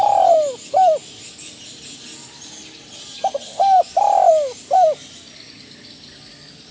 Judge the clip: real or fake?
real